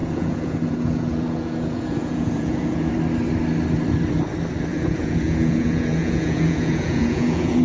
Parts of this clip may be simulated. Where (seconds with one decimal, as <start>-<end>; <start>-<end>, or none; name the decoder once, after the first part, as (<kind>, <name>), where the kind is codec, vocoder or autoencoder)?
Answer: 0.0-2.9 (vocoder, Vocos); 4.7-7.6